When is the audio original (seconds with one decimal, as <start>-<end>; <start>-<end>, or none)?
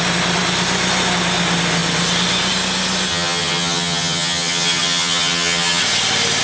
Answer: 0.0-3.1; 5.8-6.4